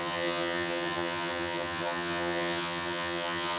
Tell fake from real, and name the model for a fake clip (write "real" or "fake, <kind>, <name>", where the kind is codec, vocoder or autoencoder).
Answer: fake, vocoder, HiFi-GAN